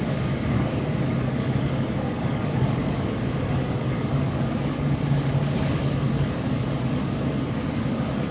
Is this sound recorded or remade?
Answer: remade